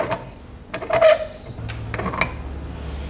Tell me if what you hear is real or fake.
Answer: real